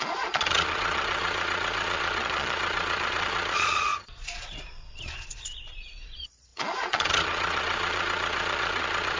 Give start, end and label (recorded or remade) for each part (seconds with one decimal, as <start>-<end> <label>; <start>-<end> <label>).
0.0-9.2 remade